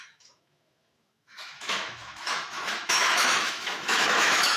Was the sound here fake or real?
fake